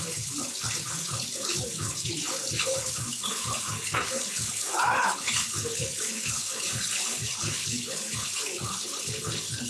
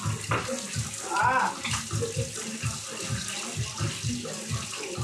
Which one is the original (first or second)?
second